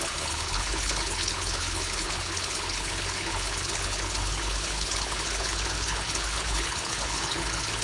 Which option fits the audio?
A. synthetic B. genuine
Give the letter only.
A